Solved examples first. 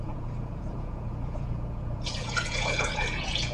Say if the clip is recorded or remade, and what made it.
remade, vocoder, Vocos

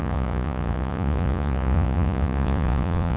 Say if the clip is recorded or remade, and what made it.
remade, vocoder, Vocos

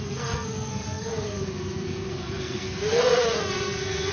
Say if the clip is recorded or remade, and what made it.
remade, codec, SNAC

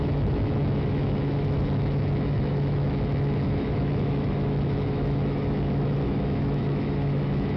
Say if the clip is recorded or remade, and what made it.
remade, autoencoder, DAC-VAE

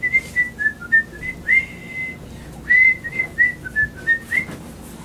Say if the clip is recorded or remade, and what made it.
recorded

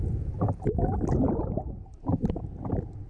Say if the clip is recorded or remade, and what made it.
recorded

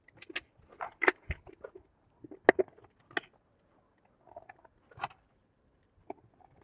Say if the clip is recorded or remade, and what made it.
recorded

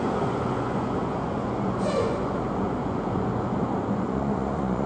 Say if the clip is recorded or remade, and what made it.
remade, vocoder, Vocos